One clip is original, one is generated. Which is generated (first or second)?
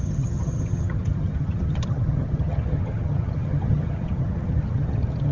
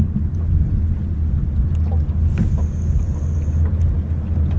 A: first